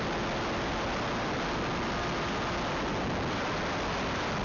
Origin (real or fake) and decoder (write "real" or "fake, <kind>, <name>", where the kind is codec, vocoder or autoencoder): real